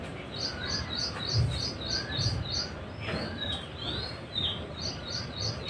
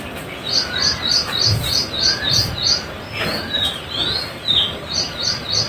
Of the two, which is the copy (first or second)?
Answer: first